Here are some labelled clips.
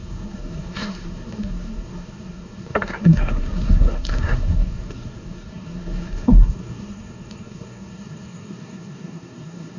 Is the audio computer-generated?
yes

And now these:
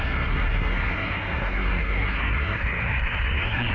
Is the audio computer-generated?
yes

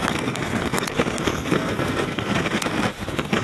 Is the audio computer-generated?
yes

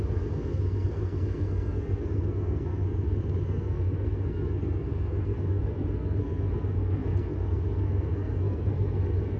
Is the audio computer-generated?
yes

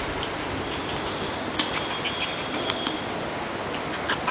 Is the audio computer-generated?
no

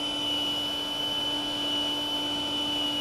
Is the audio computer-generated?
no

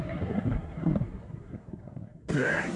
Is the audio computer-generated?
yes